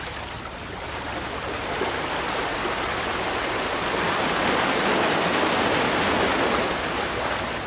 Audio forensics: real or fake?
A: real